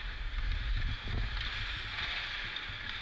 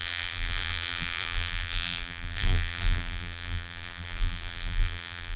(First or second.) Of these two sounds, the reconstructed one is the second